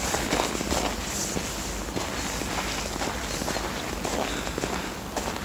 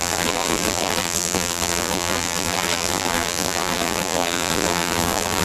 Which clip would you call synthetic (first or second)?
second